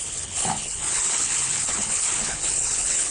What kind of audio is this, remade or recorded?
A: remade